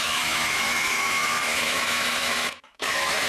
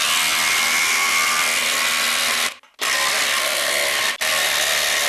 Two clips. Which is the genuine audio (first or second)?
second